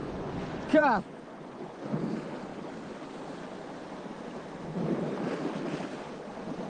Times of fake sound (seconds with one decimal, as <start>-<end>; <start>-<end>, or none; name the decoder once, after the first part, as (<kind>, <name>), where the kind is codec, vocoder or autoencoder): 0.0-2.1 (vocoder, Vocos)